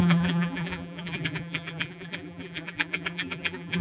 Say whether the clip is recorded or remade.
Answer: remade